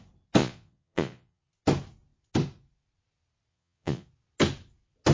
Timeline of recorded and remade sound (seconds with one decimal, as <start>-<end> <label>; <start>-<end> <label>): 0.0-0.4 recorded; 0.4-1.4 remade; 1.4-3.5 recorded; 3.5-4.1 remade; 4.1-5.1 recorded